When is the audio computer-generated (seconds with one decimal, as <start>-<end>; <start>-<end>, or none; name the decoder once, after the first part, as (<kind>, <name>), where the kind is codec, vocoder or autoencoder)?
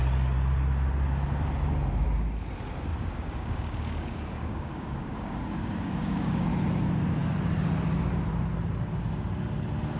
2.9-6.5 (codec, DAC)